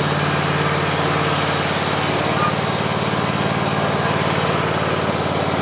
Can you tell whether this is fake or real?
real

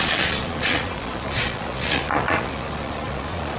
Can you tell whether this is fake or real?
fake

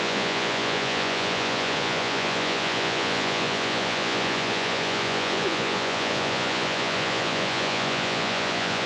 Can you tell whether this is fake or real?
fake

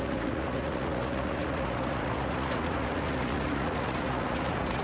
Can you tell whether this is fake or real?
fake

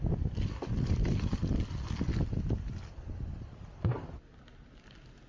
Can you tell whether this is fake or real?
real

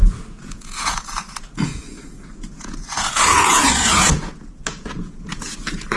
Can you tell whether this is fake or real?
fake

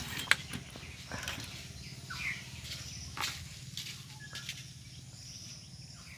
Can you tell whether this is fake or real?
real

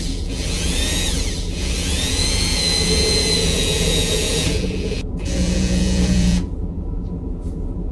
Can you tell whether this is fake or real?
fake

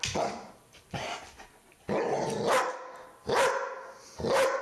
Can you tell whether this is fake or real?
real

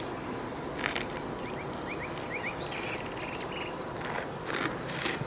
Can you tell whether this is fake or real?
real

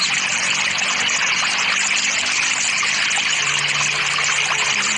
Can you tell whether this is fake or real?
real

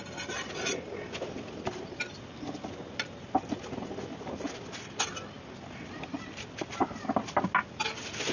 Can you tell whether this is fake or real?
real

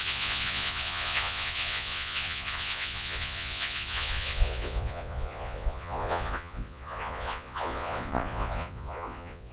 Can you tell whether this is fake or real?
fake